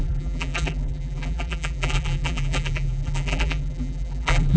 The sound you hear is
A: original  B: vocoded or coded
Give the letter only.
B